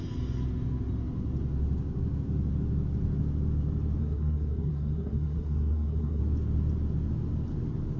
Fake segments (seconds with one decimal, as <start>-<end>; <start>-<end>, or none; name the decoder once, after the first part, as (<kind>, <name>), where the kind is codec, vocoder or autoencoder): 4.0-6.2 (codec, SNAC)